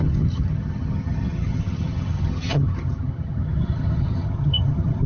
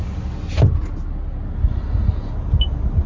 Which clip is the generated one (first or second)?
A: first